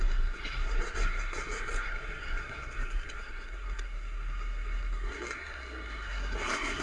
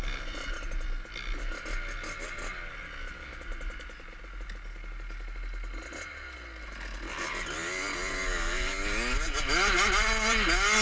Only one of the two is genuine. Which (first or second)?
second